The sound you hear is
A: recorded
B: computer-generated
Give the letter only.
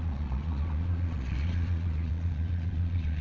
B